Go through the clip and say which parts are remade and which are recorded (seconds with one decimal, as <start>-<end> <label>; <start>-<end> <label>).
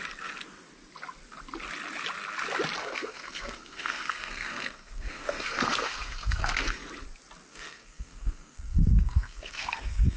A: 0.0-2.8 recorded; 2.8-6.8 remade; 6.8-7.5 recorded; 7.5-10.2 remade